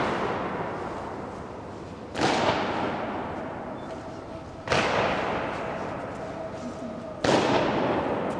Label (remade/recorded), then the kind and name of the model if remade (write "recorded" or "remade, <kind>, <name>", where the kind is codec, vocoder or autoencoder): recorded